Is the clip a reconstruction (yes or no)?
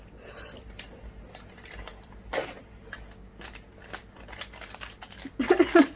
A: no